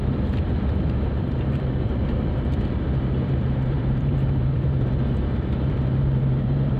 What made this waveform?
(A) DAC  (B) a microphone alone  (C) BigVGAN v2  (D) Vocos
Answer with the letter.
C